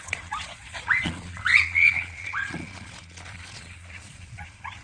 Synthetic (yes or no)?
yes